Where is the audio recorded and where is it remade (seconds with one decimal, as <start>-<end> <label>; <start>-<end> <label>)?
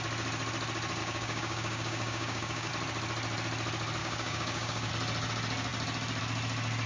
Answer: 0.0-1.0 recorded; 1.0-2.7 remade; 2.7-4.0 recorded; 4.0-4.9 remade; 4.9-6.9 recorded